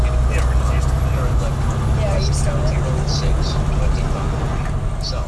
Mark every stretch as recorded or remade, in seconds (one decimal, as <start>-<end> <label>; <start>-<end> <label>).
0.0-5.3 recorded